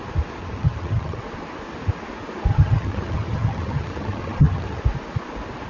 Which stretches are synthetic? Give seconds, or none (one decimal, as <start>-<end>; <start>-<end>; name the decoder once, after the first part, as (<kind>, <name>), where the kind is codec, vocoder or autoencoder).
0.4-1.2 (vocoder, HiFi-GAN); 2.5-4.8

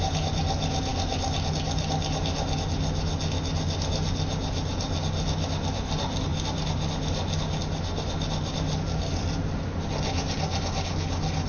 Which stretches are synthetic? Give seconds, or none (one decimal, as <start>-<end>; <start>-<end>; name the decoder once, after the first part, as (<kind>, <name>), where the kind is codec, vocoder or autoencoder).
none

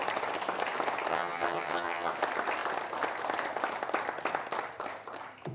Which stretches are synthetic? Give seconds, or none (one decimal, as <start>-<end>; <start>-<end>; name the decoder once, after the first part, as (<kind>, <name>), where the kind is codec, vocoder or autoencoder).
1.1-2.1 (vocoder, HiFi-GAN)

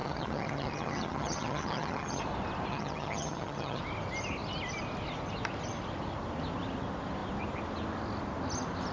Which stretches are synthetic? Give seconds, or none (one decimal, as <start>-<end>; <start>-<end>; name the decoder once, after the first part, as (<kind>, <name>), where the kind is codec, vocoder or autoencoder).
0.0-2.2 (vocoder, HiFi-GAN); 2.7-3.8

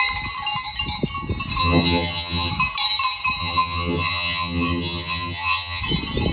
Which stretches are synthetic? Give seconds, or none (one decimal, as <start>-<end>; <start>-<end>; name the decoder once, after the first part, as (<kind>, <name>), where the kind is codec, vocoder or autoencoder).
1.6-2.5 (vocoder, HiFi-GAN); 3.4-5.8